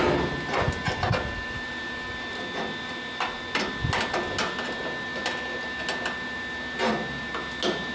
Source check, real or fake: real